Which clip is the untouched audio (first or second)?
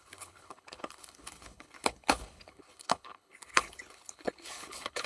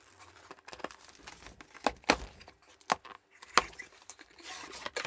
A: second